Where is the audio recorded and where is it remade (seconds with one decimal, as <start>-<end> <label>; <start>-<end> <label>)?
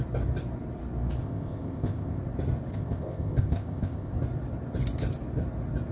0.0-1.2 recorded; 1.2-2.2 remade; 2.2-2.7 recorded; 2.7-4.1 remade; 4.1-5.9 recorded